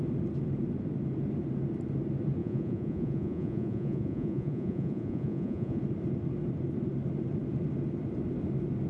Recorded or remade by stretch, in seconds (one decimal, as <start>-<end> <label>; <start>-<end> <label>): 0.0-2.4 recorded; 2.4-5.8 remade; 5.8-8.9 recorded